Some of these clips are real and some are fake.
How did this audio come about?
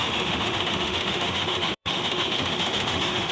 fake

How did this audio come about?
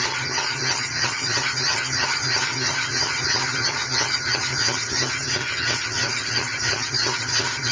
fake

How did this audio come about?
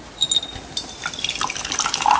real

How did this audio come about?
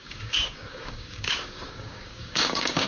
fake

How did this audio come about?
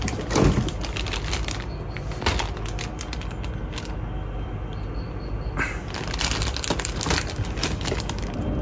real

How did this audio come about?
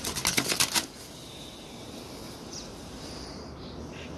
real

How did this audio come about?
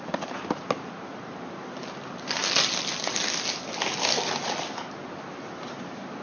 real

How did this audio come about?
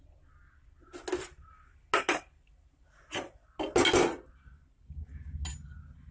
real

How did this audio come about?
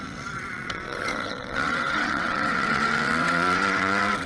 fake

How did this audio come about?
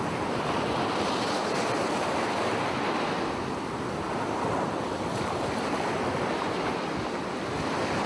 real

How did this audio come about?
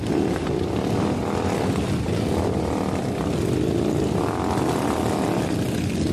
real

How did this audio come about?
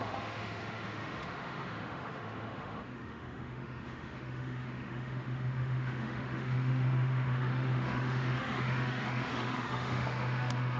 fake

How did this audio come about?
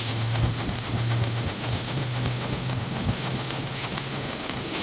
fake